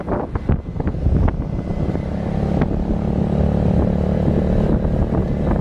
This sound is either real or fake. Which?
real